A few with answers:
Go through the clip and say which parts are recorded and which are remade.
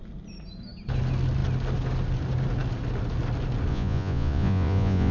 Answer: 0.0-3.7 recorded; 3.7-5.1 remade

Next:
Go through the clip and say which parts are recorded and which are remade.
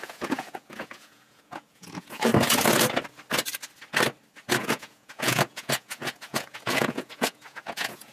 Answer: 0.0-2.3 remade; 2.3-4.6 recorded; 4.6-8.1 remade